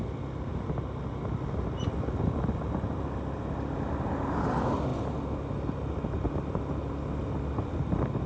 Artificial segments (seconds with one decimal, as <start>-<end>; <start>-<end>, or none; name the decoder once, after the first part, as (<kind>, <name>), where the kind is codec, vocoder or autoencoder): none